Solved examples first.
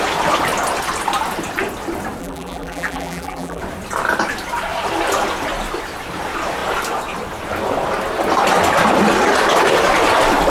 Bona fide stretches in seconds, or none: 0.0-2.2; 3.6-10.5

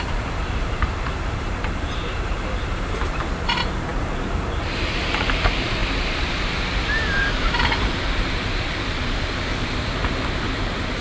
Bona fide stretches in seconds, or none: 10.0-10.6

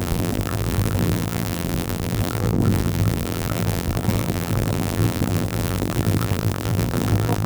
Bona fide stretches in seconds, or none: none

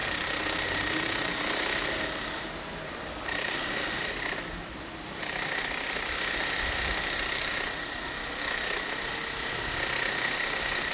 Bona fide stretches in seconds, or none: 4.1-10.9

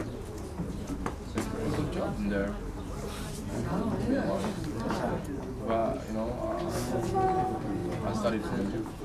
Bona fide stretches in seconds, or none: 0.0-2.4; 4.4-9.0

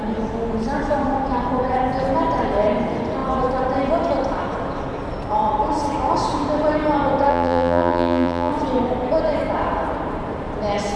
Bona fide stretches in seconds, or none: 0.0-7.3; 8.5-11.0

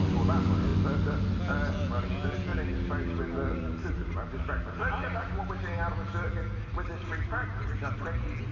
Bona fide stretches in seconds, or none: 0.0-8.5